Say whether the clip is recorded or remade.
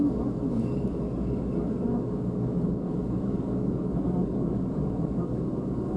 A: remade